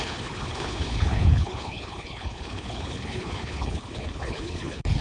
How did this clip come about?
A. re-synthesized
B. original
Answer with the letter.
A